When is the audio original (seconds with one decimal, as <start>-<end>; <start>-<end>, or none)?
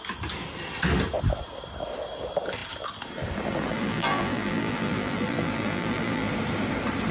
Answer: 0.0-3.7; 6.3-7.1